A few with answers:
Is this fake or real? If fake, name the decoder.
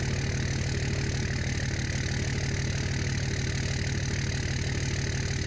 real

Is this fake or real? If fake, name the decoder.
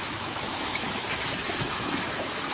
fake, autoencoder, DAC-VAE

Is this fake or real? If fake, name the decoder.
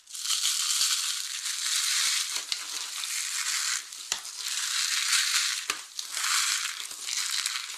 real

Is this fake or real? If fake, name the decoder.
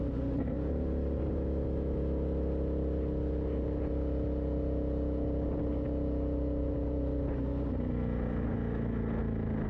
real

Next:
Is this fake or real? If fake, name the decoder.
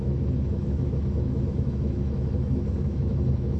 fake, autoencoder, DAC-VAE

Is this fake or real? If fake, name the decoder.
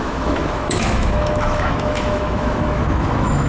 fake, autoencoder, DAC-VAE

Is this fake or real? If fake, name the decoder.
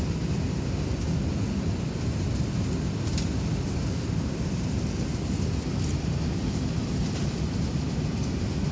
real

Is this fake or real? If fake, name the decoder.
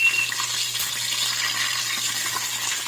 real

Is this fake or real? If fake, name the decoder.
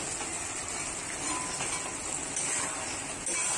real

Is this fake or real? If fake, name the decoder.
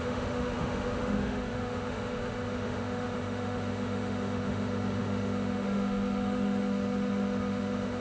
fake, autoencoder, DAC-VAE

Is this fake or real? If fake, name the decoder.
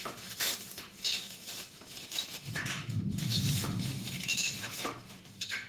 fake, autoencoder, DAC-VAE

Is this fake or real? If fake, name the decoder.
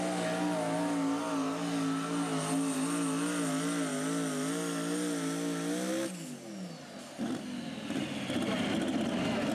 real